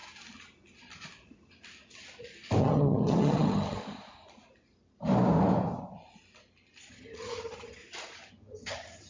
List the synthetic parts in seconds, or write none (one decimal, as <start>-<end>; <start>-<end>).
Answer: 2.6-3.8; 6.9-7.8; 8.3-9.1